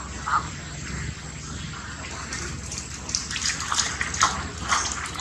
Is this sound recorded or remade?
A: recorded